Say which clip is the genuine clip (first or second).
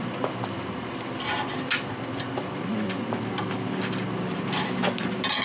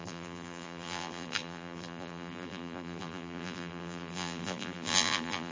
first